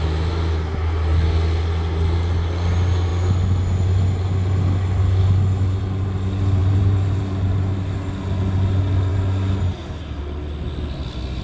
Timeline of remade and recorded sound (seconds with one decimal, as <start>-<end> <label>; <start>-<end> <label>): 0.0-11.4 recorded